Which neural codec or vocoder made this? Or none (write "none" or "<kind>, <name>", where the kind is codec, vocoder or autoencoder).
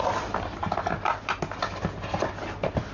none